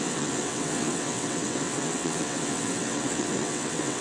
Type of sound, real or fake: fake